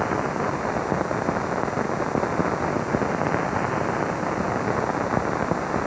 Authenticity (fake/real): real